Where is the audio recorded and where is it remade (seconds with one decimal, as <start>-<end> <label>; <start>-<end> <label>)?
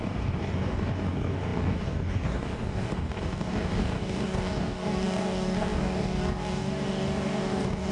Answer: 0.0-7.9 remade